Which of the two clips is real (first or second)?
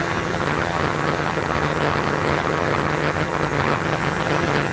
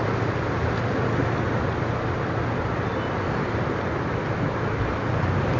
second